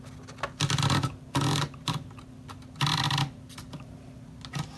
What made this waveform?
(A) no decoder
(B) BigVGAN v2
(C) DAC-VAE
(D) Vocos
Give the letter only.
A